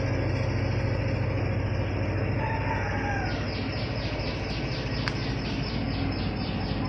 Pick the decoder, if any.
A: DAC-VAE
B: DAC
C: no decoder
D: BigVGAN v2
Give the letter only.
C